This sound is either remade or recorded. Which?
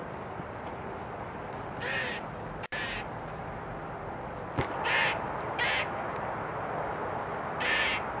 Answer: recorded